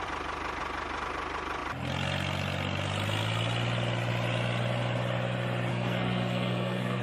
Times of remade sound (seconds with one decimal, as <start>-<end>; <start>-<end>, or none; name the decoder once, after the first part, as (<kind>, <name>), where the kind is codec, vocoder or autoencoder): 5.7-7.0 (codec, SNAC)